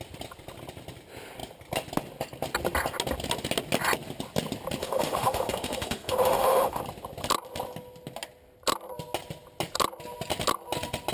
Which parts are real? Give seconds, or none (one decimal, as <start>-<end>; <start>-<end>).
0.0-4.8; 6.8-11.1